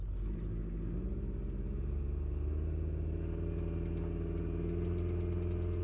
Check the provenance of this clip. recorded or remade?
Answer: recorded